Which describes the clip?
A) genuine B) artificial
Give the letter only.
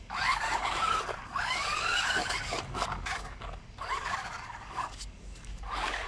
B